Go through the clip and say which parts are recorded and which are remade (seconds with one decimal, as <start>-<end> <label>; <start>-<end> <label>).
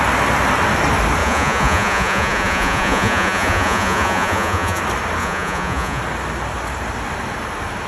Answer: 0.0-1.2 recorded; 1.2-4.8 remade; 4.8-5.2 recorded; 5.2-6.0 remade; 6.0-7.9 recorded